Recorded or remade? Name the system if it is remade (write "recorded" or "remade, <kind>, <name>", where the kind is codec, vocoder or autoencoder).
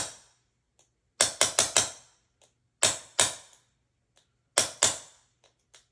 recorded